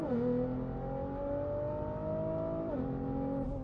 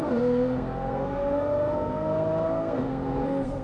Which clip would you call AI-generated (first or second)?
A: second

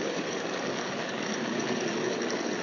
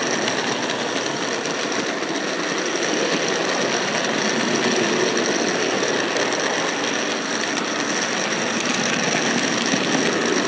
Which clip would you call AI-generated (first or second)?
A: first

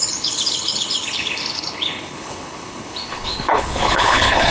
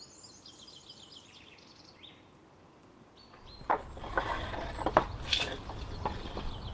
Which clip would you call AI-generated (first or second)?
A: first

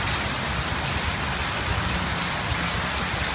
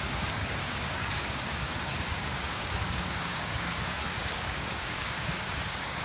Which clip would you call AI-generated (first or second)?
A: second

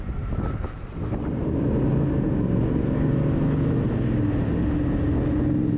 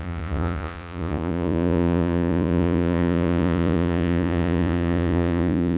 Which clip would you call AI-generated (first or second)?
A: second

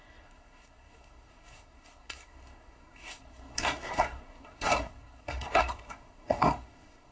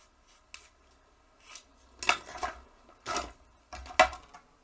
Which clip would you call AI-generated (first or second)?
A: first